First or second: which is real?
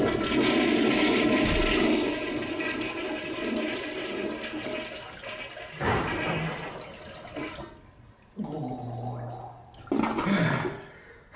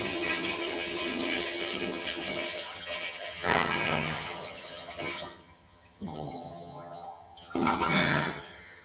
first